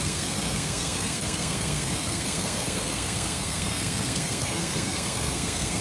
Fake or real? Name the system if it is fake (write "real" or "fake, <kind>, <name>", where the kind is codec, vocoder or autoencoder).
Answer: fake, codec, SNAC